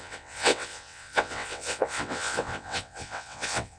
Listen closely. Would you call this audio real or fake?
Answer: fake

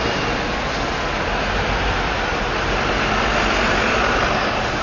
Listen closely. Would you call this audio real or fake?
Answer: real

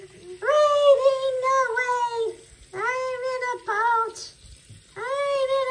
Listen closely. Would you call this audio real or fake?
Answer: real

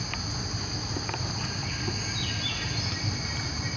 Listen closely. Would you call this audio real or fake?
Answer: real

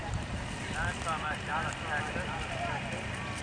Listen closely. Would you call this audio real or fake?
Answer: real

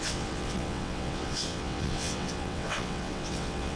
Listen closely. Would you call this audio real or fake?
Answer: fake